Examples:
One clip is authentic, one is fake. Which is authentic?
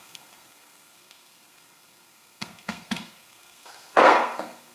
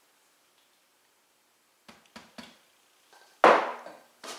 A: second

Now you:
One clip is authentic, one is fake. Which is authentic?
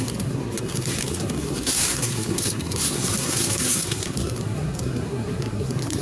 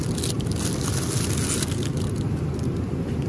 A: second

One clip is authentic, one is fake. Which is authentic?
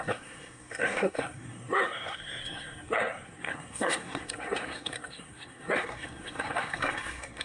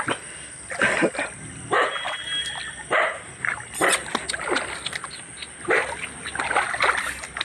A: second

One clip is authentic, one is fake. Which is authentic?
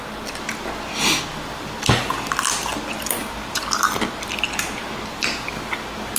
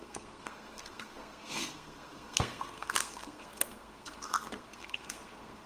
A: first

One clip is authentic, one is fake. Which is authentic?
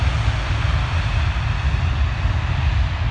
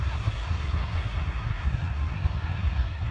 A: first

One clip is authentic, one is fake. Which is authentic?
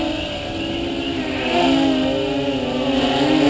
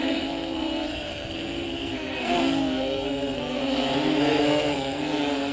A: first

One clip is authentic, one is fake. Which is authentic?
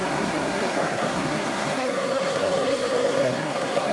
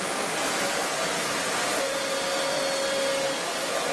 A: second